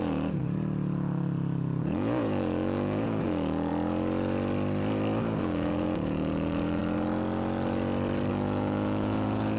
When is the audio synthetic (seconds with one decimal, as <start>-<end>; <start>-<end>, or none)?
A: 0.0-0.4; 1.8-3.7; 5.4-6.8; 8.3-9.6